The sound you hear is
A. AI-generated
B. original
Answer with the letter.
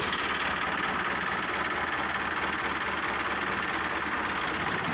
B